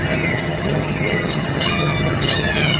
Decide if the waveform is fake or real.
fake